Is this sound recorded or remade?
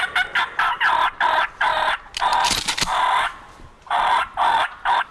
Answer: recorded